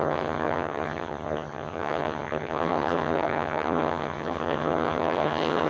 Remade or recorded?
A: remade